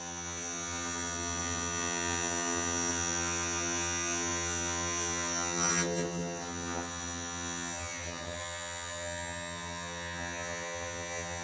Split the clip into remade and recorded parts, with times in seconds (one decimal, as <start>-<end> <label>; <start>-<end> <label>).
0.0-11.4 remade